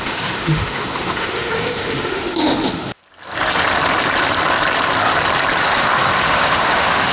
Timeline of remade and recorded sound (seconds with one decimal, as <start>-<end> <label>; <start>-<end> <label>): 0.0-3.0 remade; 3.0-5.6 recorded; 5.6-7.1 remade